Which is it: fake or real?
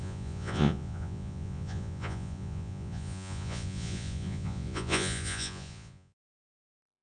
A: fake